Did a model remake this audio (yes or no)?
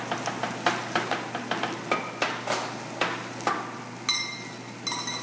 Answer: no